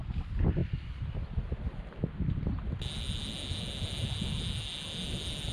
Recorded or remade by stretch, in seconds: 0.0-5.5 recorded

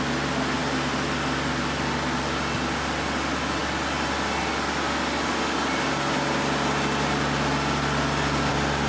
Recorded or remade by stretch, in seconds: 0.0-8.9 recorded